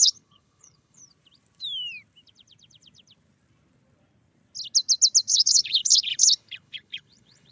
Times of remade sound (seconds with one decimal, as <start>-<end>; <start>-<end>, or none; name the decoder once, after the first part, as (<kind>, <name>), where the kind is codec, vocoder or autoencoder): 0.0-1.0 (codec, HILCodec); 5.3-7.5